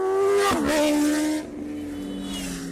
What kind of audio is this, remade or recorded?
recorded